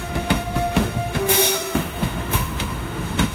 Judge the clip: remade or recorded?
remade